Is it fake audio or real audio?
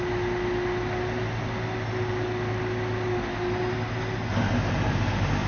real